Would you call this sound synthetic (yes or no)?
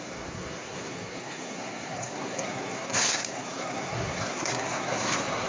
yes